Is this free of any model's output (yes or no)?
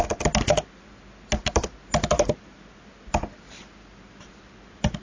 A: yes